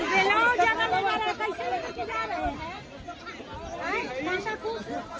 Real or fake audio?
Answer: real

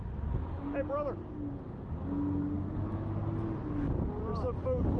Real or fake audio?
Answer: real